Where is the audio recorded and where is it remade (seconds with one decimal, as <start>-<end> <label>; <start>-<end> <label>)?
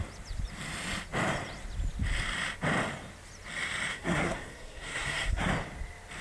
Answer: 0.0-3.9 recorded; 3.9-5.5 remade; 5.5-6.2 recorded